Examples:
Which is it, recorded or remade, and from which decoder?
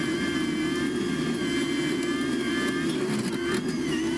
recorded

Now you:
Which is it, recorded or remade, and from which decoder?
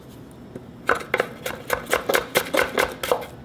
recorded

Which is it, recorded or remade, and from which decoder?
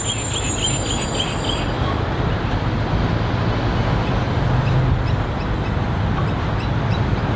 remade, vocoder, BigVGAN v2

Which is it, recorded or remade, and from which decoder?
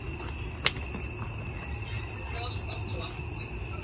recorded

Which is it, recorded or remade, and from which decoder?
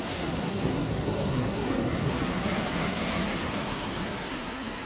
remade, codec, SNAC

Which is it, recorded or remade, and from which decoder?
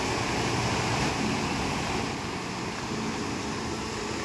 recorded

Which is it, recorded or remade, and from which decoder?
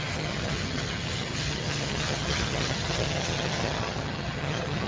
remade, vocoder, HiFi-GAN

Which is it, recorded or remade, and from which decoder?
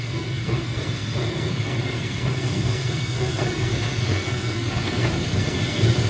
remade, codec, SNAC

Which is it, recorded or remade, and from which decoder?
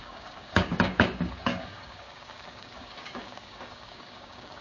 remade, codec, DAC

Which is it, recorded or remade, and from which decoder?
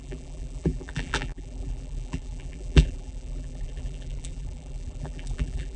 remade, vocoder, BigVGAN v2